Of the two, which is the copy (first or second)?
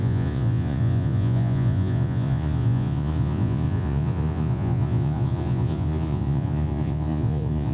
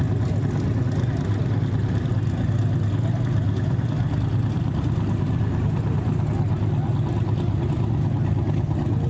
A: first